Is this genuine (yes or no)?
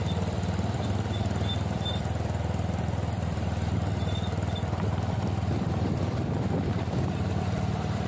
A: no